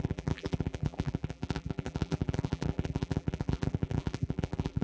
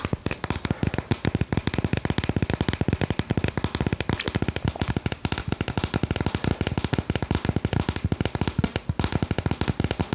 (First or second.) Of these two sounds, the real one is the second